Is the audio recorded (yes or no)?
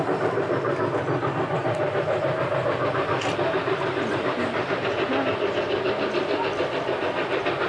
yes